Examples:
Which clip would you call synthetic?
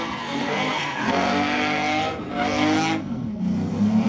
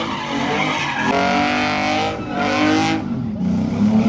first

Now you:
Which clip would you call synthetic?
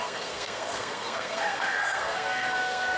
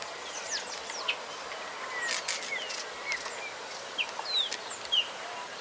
first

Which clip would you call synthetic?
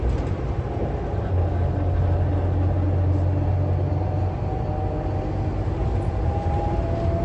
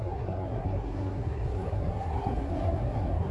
second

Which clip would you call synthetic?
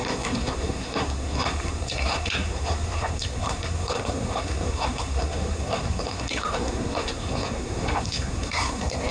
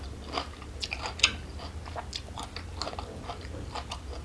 first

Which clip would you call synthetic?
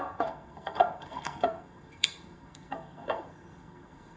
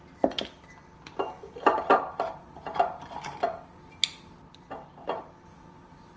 first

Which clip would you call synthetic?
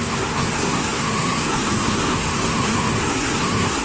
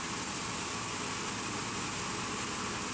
first